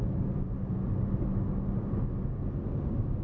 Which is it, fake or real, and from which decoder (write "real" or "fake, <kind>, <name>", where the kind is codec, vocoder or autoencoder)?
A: real